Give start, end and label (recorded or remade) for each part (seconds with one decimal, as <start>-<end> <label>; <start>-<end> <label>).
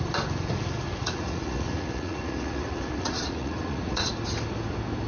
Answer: 0.0-1.0 recorded; 1.0-4.1 remade; 4.1-5.1 recorded